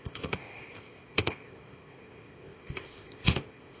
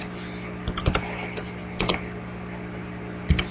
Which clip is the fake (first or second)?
first